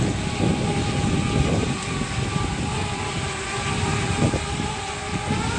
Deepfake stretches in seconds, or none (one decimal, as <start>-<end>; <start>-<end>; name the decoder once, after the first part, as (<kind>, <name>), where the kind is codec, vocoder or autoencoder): none

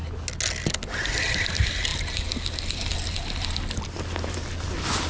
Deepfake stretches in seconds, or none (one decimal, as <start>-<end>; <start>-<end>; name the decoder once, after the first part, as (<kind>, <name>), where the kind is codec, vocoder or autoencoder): none

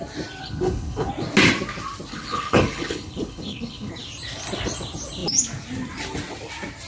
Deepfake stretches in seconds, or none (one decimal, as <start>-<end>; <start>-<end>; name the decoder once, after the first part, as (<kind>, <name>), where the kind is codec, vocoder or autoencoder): 0.4-1.1 (codec, HILCodec); 2.1-3.9

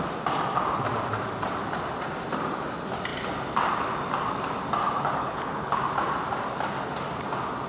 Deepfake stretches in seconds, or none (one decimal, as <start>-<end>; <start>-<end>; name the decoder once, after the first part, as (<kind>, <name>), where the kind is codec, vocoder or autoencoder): 5.2-5.8 (codec, HILCodec)

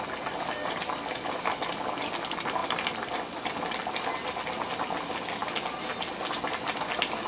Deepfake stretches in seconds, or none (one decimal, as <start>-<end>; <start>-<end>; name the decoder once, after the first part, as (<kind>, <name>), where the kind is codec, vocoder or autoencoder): none